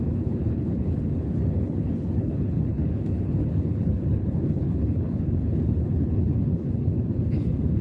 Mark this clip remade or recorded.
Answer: remade